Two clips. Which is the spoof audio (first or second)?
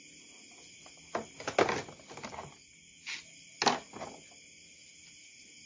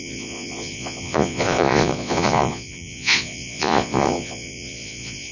second